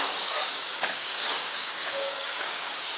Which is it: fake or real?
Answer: fake